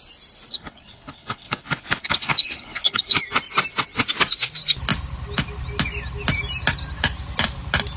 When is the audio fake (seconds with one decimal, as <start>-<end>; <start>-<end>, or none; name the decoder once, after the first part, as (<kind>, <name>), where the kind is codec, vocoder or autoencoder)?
0.5-3.2 (codec, HILCodec)

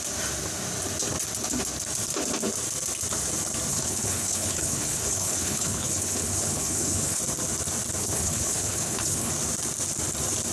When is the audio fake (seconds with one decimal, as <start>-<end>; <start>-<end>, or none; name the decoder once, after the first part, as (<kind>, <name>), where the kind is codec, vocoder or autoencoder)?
3.7-7.2 (codec, HILCodec); 8.0-9.3

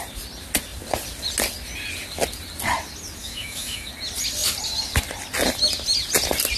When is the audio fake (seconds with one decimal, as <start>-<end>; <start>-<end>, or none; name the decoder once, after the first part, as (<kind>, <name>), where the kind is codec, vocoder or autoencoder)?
3.2-3.9 (autoencoder, DAC-VAE)